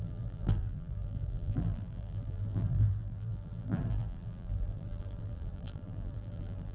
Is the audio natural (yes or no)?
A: no